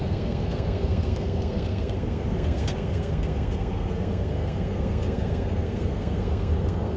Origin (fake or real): fake